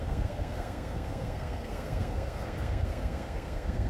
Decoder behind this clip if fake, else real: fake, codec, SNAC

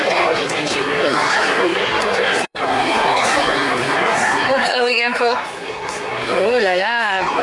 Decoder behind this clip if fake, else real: fake, codec, SNAC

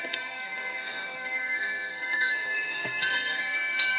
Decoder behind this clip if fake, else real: fake, codec, SNAC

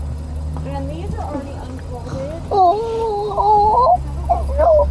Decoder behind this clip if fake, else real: real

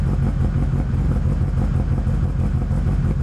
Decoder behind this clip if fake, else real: real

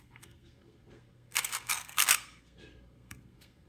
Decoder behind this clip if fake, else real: fake, codec, SNAC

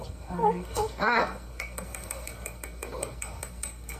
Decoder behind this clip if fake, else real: fake, codec, SNAC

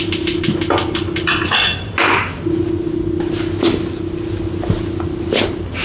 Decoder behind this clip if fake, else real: real